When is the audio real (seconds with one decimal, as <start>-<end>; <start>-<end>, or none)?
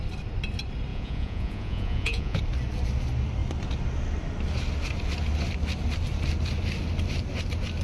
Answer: 0.0-0.9; 2.4-7.8